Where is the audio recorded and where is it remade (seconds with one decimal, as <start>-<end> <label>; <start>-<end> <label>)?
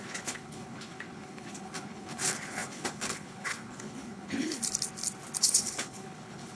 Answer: 0.0-4.6 remade; 4.6-5.4 recorded; 5.4-6.6 remade